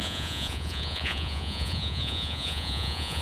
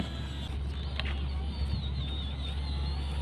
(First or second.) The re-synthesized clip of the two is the first